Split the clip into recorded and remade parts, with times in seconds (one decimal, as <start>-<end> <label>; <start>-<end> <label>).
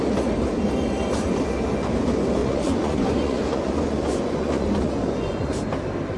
0.0-2.4 recorded; 2.4-5.5 remade; 5.5-6.2 recorded